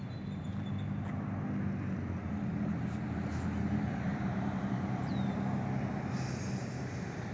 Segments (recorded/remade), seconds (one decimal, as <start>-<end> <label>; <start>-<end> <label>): 0.0-4.1 recorded; 4.1-5.1 remade; 5.1-7.3 recorded